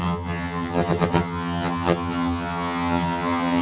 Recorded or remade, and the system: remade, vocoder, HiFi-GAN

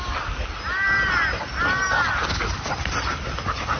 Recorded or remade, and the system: recorded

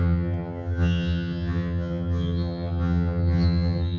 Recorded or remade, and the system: remade, vocoder, HiFi-GAN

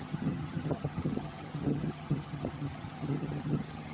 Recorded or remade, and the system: remade, vocoder, HiFi-GAN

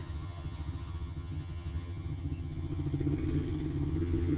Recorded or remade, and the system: remade, vocoder, HiFi-GAN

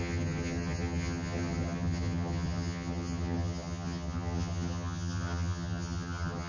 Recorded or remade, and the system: remade, vocoder, HiFi-GAN